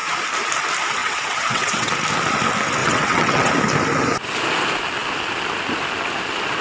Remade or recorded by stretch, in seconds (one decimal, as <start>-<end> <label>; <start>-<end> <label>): 0.0-1.0 recorded; 1.0-1.9 remade; 1.9-2.8 recorded; 2.8-3.5 remade; 3.5-6.6 recorded